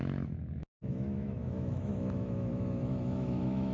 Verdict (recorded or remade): remade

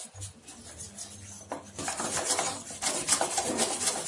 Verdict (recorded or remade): recorded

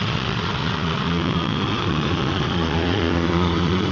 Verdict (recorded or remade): remade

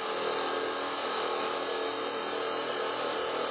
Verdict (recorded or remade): recorded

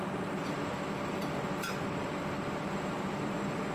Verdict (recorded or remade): remade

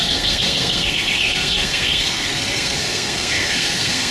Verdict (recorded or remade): remade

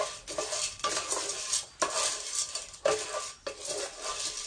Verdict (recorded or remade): recorded